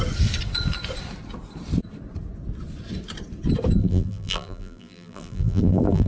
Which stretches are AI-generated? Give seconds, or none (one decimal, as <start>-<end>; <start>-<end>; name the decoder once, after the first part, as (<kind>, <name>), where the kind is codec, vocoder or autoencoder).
3.8-6.1 (vocoder, BigVGAN v2)